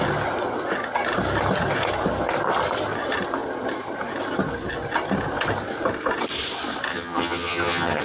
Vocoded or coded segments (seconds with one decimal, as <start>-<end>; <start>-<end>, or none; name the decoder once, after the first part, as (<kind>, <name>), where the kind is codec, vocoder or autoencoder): 6.9-8.0 (vocoder, HiFi-GAN)